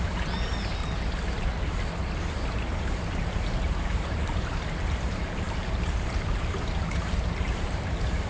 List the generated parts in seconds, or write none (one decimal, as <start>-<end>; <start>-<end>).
0.0-0.8; 2.9-8.3